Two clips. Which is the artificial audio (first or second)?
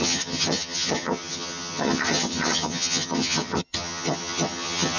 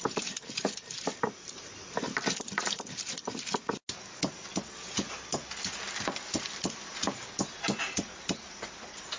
first